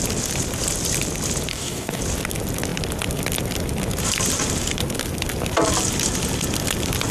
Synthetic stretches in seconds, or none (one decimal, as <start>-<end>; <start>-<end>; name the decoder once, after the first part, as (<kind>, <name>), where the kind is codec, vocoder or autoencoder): 1.5-2.0 (codec, DAC)